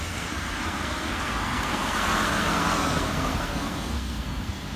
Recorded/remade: remade